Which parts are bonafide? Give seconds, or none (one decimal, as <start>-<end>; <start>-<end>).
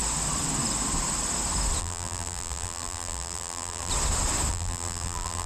0.0-1.8; 3.9-4.5